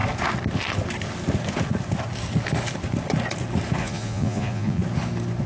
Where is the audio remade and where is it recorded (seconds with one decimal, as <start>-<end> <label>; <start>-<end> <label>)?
0.0-3.8 recorded; 3.8-4.8 remade; 4.8-5.5 recorded